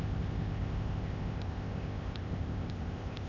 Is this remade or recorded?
remade